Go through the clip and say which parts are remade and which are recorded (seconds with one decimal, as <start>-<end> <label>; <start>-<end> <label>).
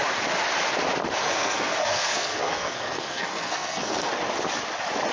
0.0-1.2 recorded; 1.2-4.1 remade; 4.1-5.1 recorded